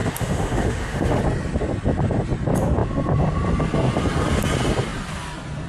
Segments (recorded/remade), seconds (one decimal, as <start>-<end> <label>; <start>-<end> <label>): 0.0-1.2 remade; 1.2-5.7 recorded